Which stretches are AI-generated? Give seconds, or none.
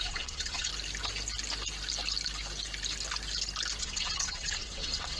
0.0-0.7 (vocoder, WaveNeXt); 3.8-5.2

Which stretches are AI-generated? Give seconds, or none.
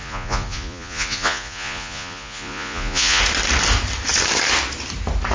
0.0-3.2 (vocoder, Vocos)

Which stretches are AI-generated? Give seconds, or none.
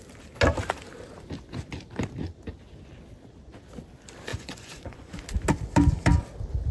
4.3-5.1 (vocoder, Vocos)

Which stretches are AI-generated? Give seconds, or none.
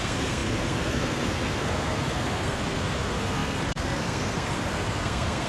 0.0-5.5 (codec, SNAC)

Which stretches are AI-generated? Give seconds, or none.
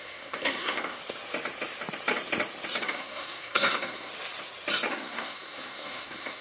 0.0-1.0 (codec, SNAC); 2.8-4.1; 4.9-6.4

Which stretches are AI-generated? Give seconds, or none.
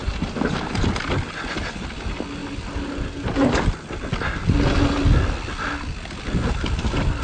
none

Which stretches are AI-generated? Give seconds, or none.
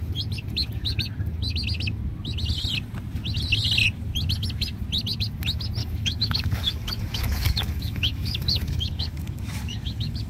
5.8-10.3 (codec, DAC)